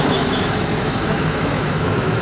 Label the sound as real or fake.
fake